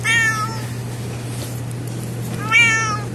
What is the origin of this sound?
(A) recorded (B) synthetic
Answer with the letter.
A